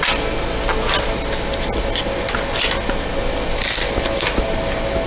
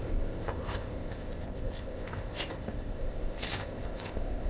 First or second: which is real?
first